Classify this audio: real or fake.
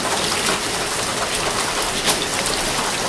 real